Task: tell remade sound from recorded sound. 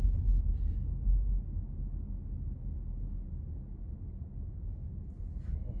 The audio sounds recorded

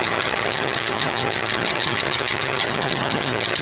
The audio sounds remade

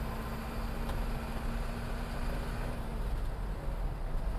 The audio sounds recorded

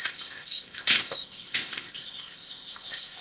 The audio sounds remade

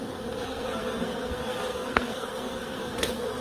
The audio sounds remade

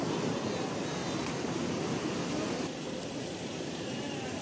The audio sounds recorded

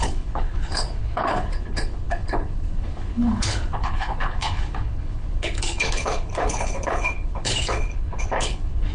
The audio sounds remade